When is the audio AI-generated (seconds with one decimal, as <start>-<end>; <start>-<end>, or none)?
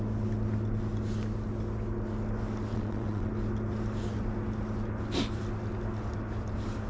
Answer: 2.7-3.3